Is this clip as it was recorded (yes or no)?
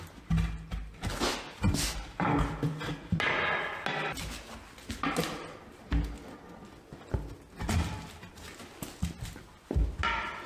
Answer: yes